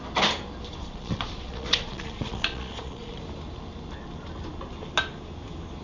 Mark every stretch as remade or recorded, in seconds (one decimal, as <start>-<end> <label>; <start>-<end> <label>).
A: 0.0-0.8 recorded; 0.8-3.2 remade; 3.2-5.8 recorded